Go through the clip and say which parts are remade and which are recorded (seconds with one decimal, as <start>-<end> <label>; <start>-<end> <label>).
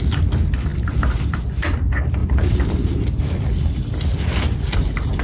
0.0-2.2 recorded; 2.2-3.2 remade; 3.2-5.2 recorded